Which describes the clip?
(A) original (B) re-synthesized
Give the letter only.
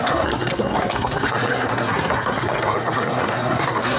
B